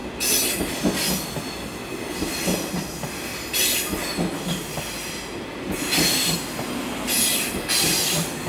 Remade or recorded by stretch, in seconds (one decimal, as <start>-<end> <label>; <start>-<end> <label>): 0.0-8.5 recorded